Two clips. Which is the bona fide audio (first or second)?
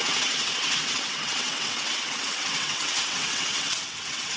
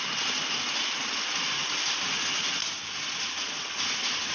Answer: second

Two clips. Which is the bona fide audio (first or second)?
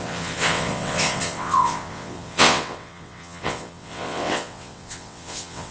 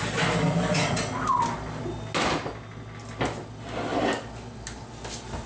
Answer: second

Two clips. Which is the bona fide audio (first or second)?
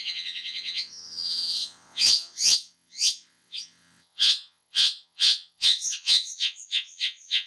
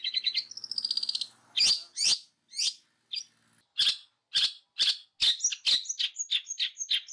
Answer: second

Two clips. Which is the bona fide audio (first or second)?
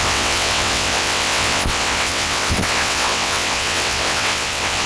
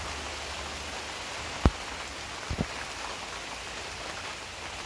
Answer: second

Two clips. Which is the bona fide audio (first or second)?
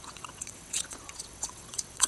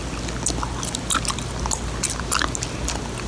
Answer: second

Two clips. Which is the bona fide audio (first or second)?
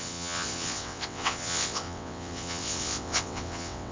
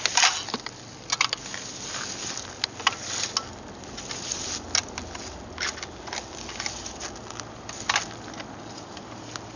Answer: second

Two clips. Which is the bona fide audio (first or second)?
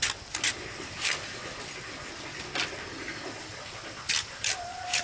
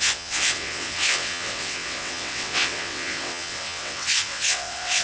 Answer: first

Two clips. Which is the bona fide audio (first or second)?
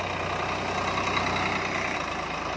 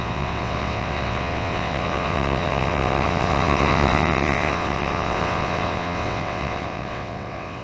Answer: first